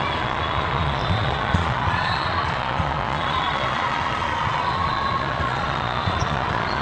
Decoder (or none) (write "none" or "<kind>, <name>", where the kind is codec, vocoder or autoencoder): vocoder, Vocos